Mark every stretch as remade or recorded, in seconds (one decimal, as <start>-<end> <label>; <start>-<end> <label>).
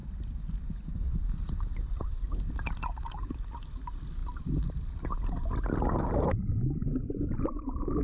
0.0-8.0 recorded